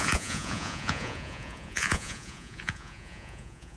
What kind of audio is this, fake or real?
fake